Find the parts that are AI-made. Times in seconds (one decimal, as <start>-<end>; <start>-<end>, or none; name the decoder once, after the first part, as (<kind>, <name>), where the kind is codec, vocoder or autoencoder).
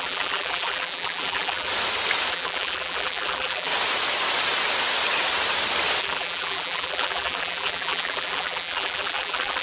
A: 0.0-1.7 (vocoder, BigVGAN v2); 2.3-3.7; 6.0-9.6